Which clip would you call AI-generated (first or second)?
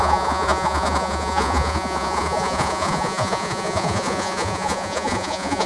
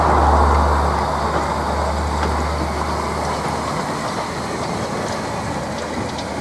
first